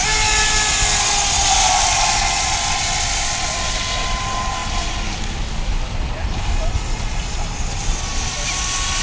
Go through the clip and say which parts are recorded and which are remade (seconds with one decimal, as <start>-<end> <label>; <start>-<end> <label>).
0.0-9.0 recorded